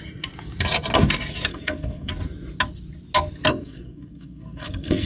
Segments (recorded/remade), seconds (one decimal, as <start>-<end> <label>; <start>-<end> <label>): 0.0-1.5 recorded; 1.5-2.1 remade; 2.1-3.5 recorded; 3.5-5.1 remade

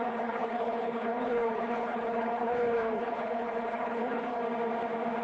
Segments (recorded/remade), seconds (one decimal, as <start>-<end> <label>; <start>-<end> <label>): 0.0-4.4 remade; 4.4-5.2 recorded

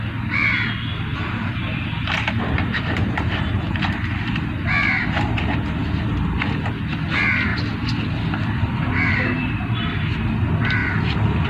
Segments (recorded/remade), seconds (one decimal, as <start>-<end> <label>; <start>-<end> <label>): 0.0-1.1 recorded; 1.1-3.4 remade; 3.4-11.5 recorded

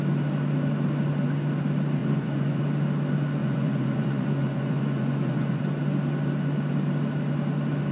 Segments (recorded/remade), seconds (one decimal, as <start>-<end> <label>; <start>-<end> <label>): 0.0-2.0 recorded; 2.0-2.6 remade; 2.6-3.4 recorded; 3.4-5.6 remade; 5.6-7.9 recorded